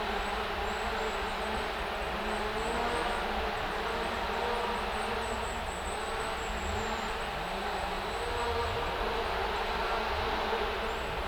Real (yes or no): yes